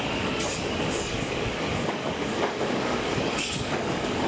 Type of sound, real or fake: fake